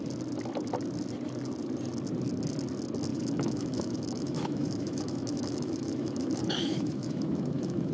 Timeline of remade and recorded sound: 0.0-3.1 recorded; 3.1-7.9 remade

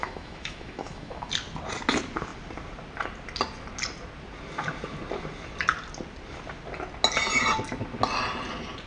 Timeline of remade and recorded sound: 0.0-1.3 remade; 1.3-8.9 recorded

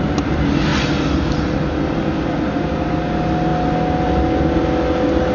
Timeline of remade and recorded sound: 0.0-5.3 recorded

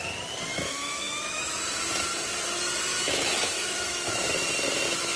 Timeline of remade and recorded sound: 0.0-0.5 recorded; 0.5-1.6 remade; 1.6-2.9 recorded; 2.9-4.3 remade; 4.3-5.2 recorded

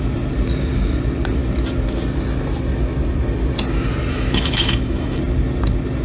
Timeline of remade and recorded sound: 0.0-4.1 recorded; 4.1-5.2 remade; 5.2-6.0 recorded

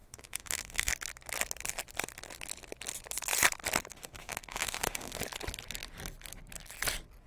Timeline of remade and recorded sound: 0.0-0.9 remade; 0.9-3.9 recorded; 3.9-5.2 remade; 5.2-7.3 recorded

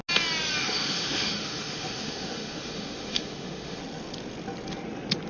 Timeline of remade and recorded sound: 0.0-0.6 recorded; 0.6-3.8 remade; 3.8-5.3 recorded

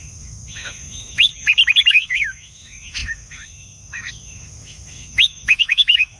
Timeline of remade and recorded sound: 0.0-1.3 remade; 1.3-1.9 recorded; 1.9-6.2 remade